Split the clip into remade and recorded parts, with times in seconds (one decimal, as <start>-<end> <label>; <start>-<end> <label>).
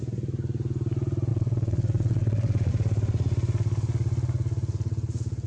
0.0-1.3 recorded; 1.3-2.7 remade; 2.7-5.5 recorded